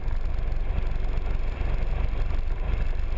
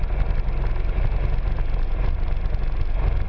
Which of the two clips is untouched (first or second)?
second